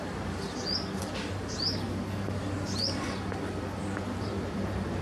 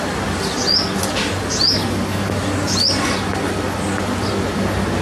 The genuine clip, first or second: second